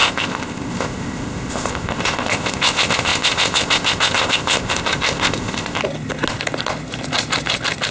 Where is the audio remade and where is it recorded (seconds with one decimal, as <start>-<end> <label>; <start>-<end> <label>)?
0.0-5.8 remade; 5.8-7.9 recorded